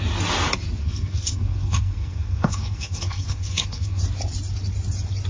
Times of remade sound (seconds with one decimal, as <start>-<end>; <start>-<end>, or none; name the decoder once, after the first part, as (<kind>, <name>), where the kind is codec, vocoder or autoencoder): 0.8-4.0 (codec, SNAC)